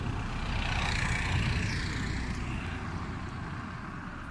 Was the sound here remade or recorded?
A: recorded